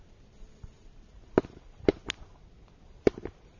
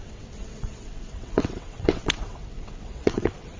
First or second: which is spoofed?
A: second